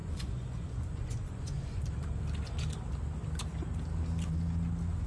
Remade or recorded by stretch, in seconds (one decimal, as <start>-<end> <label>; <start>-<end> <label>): 0.0-1.8 remade; 1.8-5.1 recorded